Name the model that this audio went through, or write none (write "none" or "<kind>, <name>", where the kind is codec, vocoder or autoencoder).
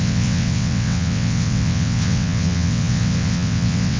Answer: vocoder, WaveNeXt